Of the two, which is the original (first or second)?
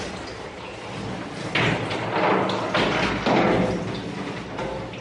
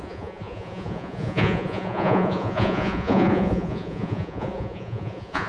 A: first